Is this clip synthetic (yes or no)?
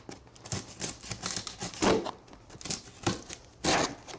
no